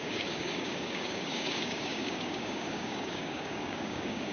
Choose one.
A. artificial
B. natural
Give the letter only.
A